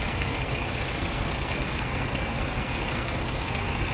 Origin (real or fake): fake